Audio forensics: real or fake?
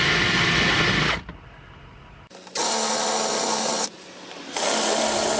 fake